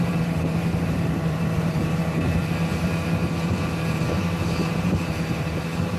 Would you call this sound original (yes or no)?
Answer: no